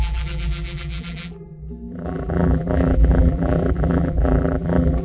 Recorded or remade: remade